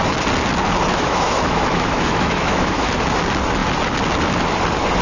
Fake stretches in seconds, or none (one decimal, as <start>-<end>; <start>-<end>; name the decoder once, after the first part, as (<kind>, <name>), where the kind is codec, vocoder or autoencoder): 0.9-2.9 (autoencoder, DAC-VAE)